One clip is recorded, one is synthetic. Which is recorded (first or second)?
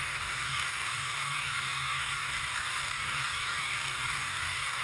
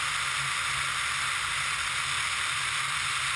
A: second